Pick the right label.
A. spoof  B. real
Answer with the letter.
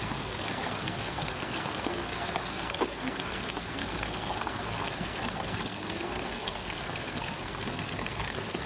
A